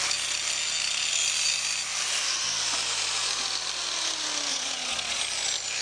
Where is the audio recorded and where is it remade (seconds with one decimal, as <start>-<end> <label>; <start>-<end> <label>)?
0.0-4.5 recorded; 4.5-5.2 remade; 5.2-5.8 recorded